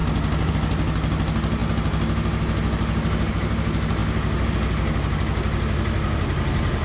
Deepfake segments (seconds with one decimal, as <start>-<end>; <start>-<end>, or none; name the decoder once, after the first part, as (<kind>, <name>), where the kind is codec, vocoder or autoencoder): none